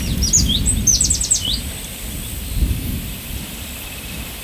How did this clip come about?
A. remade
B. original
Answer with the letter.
B